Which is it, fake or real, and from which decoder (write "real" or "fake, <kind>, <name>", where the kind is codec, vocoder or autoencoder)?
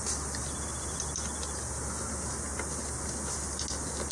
real